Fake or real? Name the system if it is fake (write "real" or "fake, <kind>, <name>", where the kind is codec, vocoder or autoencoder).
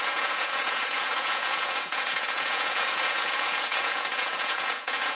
fake, vocoder, Vocos